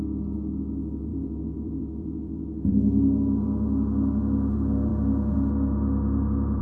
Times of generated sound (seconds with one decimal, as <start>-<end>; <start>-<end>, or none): 1.1-2.7